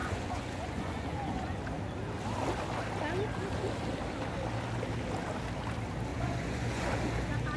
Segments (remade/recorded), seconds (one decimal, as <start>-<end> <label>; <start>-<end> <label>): 0.0-1.6 remade; 1.6-6.1 recorded; 6.1-6.9 remade; 6.9-7.6 recorded